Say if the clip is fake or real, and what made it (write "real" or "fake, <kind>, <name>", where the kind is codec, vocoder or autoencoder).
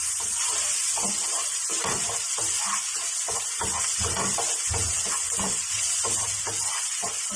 real